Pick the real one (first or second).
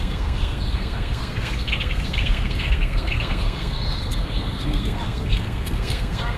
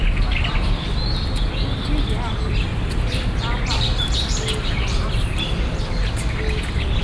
second